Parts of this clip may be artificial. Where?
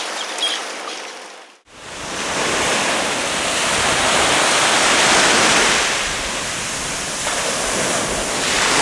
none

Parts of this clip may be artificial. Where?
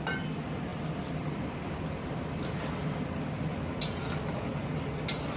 none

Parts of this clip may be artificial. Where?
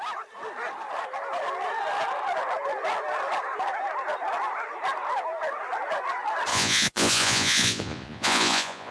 6.5-8.9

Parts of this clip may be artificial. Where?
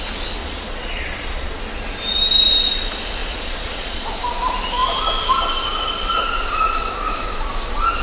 0.4-1.6; 3.2-4.0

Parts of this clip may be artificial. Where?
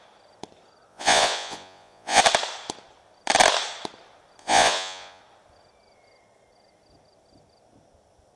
0.9-2.2; 4.4-5.2